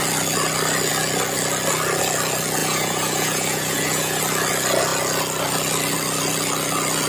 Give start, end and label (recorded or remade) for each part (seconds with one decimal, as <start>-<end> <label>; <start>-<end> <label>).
0.0-2.6 recorded; 2.6-4.2 remade; 4.2-7.1 recorded